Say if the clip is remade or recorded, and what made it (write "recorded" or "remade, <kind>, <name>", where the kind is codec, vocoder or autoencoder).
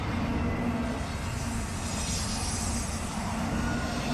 recorded